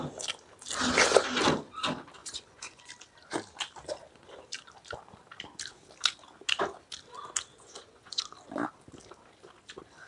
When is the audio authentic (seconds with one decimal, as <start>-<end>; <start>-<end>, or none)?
0.0-2.2; 2.9-7.5; 8.2-10.1